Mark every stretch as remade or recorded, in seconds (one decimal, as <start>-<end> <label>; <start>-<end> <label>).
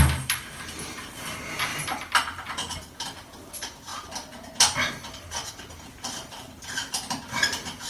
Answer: 0.0-1.7 recorded; 1.7-3.5 remade; 3.5-7.9 recorded